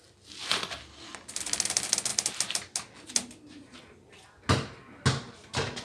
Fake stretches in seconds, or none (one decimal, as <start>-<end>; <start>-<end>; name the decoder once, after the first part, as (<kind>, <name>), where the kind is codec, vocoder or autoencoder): none

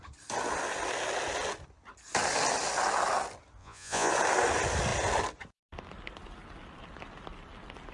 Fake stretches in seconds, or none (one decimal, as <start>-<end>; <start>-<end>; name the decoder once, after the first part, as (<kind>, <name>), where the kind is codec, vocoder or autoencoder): 3.6-4.1 (vocoder, Vocos)

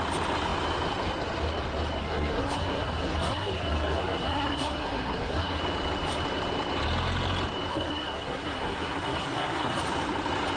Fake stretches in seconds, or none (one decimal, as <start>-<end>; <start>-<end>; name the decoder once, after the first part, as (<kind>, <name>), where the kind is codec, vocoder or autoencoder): 2.0-5.6 (codec, SNAC); 7.7-9.8

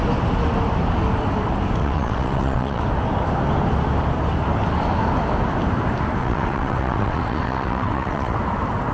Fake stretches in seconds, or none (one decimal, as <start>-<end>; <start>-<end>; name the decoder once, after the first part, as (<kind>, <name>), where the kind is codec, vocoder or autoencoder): 1.8-2.8 (vocoder, WaveNeXt); 6.2-8.4

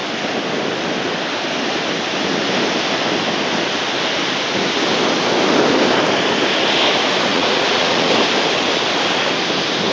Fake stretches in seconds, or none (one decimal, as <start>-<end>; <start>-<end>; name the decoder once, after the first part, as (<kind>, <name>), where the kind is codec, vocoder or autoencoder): 7.3-8.1 (vocoder, Vocos)

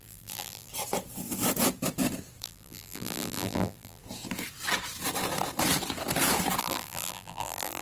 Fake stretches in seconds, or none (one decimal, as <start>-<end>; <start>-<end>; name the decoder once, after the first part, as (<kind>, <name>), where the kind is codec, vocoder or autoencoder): 0.0-0.7 (vocoder, BigVGAN v2); 2.4-4.0; 6.6-7.8

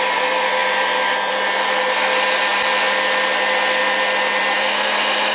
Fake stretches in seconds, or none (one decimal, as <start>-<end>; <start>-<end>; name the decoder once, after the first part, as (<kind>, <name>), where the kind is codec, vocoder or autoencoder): none

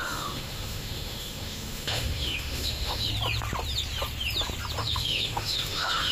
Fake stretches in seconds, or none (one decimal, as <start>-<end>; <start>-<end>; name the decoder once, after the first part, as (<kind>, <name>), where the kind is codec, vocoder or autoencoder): 0.0-3.1 (autoencoder, DAC-VAE); 4.8-6.1